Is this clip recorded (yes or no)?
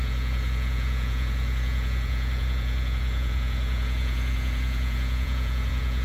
no